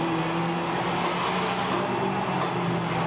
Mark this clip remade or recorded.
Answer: recorded